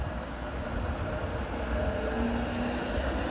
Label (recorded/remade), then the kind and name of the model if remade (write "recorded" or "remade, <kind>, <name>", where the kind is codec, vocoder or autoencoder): recorded